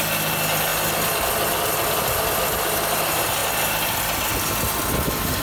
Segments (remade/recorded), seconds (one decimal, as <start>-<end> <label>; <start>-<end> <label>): 0.0-5.4 recorded